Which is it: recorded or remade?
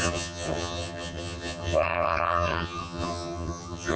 remade